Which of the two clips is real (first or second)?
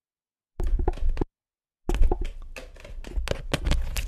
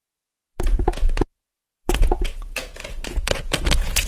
first